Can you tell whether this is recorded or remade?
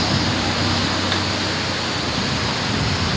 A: recorded